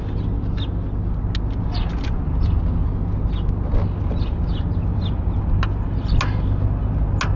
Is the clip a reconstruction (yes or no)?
no